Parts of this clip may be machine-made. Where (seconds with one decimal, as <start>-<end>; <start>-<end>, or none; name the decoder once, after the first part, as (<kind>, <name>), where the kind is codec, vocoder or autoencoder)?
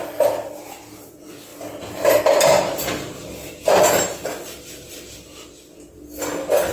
none